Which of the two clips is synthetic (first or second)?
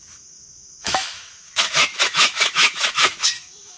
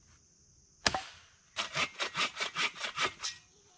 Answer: first